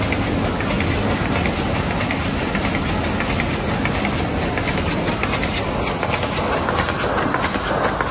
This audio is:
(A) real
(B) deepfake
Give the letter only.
A